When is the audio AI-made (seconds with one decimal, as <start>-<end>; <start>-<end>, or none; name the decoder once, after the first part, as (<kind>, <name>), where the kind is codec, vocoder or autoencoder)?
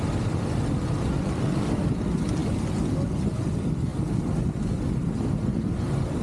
0.0-2.4 (vocoder, BigVGAN v2); 3.5-3.9; 5.0-6.2